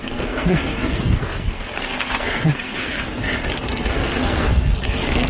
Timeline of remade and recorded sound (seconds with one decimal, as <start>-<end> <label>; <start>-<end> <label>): 0.0-3.2 remade; 3.2-3.7 recorded; 3.7-5.3 remade